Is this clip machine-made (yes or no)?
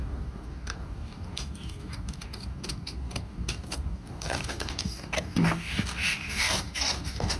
yes